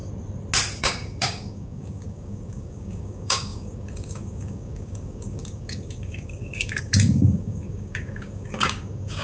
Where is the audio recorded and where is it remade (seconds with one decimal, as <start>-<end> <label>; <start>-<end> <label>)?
0.0-0.8 recorded; 0.8-9.2 remade